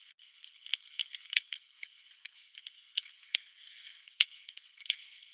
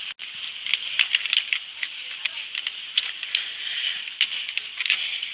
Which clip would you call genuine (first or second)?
second